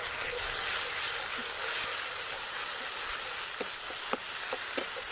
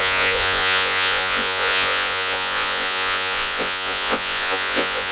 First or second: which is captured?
first